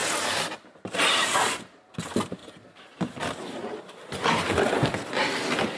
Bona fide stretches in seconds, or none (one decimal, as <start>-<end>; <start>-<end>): 0.0-5.8